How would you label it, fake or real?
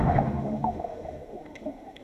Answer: fake